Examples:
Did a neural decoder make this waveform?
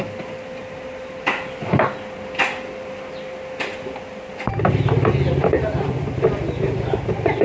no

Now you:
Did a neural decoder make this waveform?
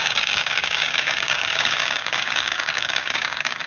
yes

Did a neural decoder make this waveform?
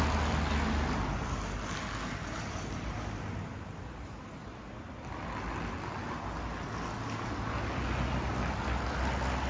no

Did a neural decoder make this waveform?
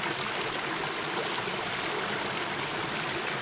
no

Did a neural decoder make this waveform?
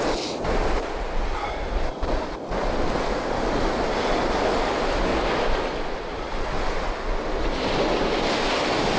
no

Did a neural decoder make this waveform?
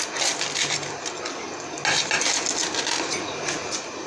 no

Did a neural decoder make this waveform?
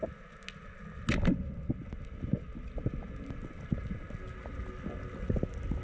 no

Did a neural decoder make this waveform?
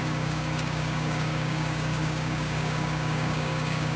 yes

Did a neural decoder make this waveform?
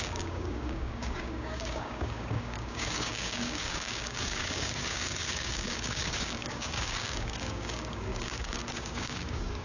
yes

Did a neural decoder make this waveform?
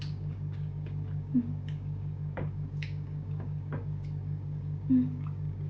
yes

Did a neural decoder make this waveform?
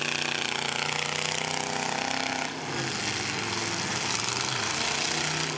no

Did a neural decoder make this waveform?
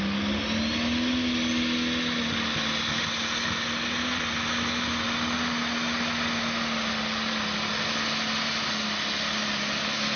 no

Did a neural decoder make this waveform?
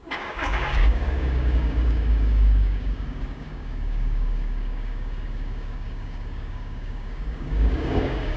yes